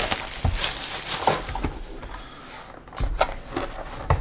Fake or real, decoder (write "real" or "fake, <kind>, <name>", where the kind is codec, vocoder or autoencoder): real